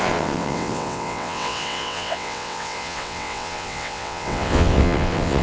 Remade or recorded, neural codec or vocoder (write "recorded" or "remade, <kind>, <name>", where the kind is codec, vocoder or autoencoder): remade, vocoder, WaveNeXt